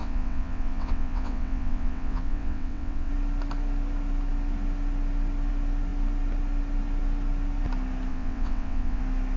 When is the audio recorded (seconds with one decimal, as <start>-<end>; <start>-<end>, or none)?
3.1-8.1; 9.0-9.4